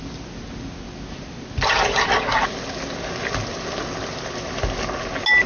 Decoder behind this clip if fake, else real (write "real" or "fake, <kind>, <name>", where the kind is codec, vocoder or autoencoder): real